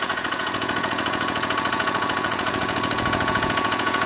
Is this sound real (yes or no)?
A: no